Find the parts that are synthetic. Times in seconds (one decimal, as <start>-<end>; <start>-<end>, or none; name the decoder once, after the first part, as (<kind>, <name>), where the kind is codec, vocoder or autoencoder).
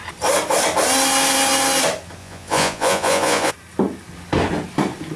2.2-3.5 (vocoder, Vocos)